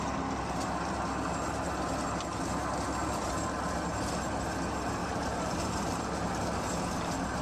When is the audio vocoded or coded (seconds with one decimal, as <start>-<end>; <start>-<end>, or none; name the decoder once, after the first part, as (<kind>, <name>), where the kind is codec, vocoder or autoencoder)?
5.0-6.0 (vocoder, BigVGAN v2)